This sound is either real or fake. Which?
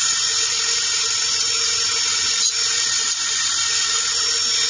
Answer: real